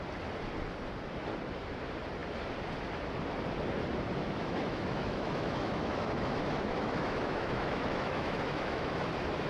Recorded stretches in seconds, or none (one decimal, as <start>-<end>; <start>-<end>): 0.0-4.2; 9.1-9.5